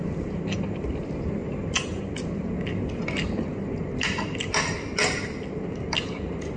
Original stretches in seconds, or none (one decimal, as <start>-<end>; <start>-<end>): 0.0-1.4; 2.0-6.6